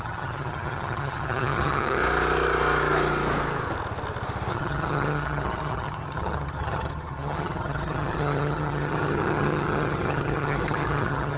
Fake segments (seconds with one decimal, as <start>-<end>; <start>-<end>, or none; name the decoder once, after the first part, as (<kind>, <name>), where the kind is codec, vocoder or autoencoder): 0.0-2.0 (vocoder, HiFi-GAN); 4.5-11.4